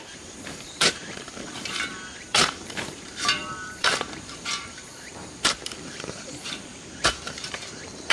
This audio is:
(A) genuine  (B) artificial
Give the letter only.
B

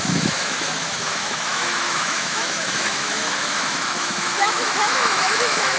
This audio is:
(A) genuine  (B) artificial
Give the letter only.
B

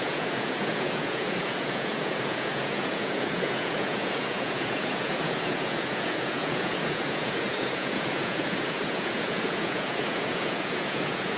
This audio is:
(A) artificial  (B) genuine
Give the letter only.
A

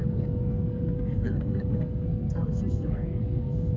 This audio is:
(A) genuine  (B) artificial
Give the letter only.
B